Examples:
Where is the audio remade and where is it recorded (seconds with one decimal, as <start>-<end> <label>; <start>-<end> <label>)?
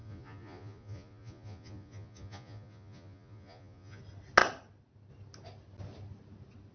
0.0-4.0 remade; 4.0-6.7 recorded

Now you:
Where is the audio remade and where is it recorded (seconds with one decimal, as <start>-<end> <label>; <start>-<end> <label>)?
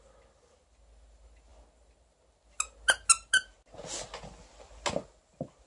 0.0-5.7 recorded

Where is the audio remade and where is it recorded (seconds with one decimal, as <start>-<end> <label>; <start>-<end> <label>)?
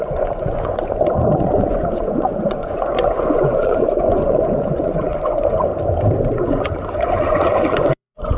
0.0-5.7 remade; 5.7-6.3 recorded; 6.3-8.4 remade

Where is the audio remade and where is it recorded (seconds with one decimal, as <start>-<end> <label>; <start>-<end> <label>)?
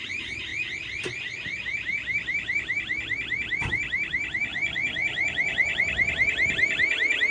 0.0-4.5 recorded; 4.5-5.8 remade; 5.8-7.3 recorded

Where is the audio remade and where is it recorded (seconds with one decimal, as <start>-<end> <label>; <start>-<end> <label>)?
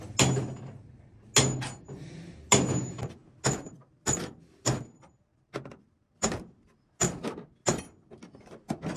0.0-9.0 recorded